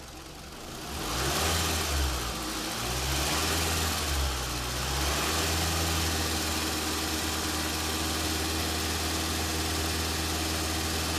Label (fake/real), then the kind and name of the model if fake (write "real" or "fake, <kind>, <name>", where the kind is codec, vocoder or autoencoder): real